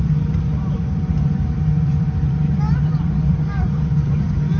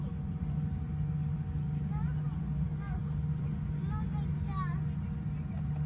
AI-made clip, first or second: first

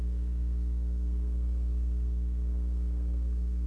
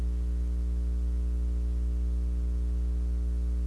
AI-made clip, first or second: first